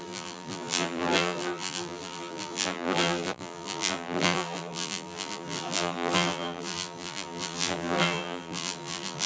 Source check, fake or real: fake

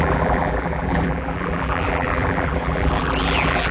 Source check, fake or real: fake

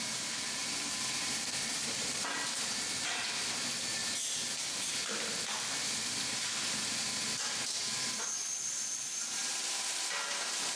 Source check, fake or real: fake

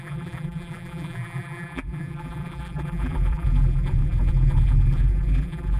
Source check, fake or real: fake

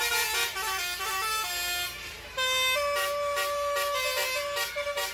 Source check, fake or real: fake